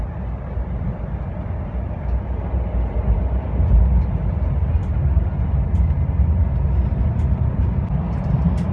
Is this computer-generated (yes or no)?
no